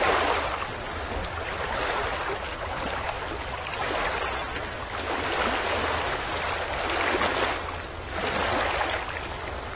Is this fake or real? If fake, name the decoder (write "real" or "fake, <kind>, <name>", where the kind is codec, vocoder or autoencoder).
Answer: real